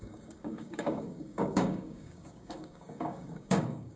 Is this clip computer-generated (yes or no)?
yes